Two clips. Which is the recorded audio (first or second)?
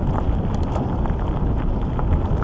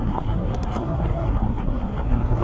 first